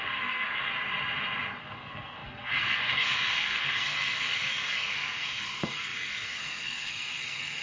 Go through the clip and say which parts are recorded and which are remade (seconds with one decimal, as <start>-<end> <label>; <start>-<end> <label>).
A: 0.0-0.7 remade; 0.7-1.6 recorded; 1.6-7.6 remade